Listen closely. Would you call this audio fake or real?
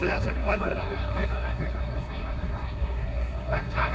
fake